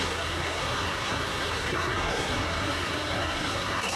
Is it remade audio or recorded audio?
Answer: remade